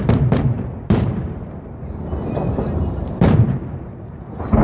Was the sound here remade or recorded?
remade